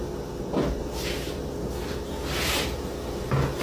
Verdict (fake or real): real